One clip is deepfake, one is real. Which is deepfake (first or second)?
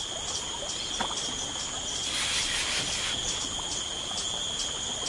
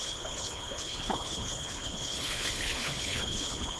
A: second